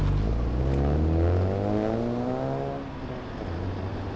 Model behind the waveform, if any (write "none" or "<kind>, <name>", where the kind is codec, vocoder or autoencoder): none